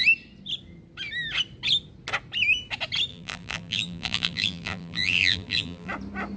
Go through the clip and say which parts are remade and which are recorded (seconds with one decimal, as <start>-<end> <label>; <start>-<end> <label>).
0.0-3.1 recorded; 3.1-5.9 remade; 5.9-6.4 recorded